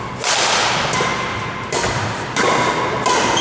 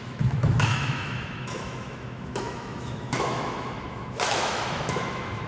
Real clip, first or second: first